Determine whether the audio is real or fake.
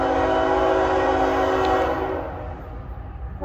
real